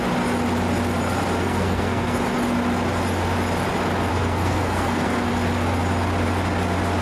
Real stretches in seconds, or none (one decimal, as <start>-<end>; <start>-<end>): 0.0-1.4; 2.2-4.1; 5.3-7.0

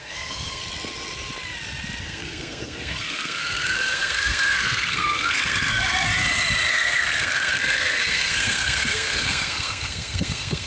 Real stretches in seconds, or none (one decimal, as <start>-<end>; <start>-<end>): 0.6-2.0; 6.1-6.7

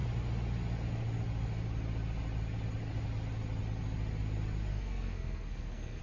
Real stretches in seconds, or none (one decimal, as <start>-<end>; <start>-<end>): 0.0-4.7

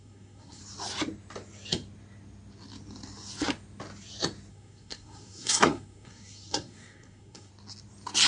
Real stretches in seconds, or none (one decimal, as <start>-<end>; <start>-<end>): 0.6-4.5; 7.5-8.3

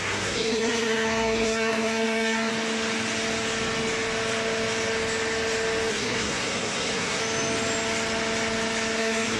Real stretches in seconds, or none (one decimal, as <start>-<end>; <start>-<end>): 2.5-5.9; 7.2-9.0